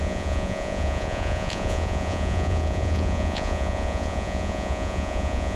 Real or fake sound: fake